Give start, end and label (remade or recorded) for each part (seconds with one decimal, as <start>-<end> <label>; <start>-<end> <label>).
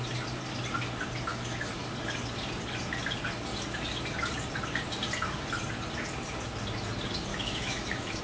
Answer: 0.0-1.3 recorded; 1.3-1.8 remade; 1.8-7.3 recorded; 7.3-8.2 remade